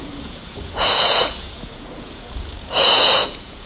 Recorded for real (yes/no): no